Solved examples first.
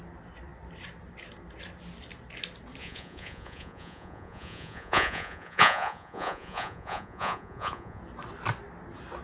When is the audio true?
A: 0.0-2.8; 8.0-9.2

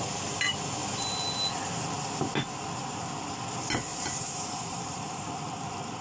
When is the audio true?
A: 0.0-0.8; 1.4-3.9; 5.2-6.0

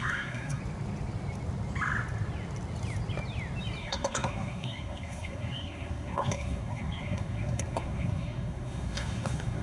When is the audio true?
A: 0.6-3.8